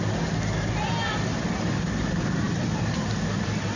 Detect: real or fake real